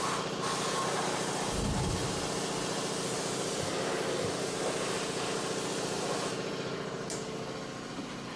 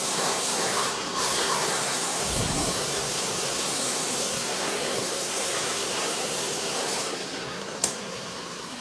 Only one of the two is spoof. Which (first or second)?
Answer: second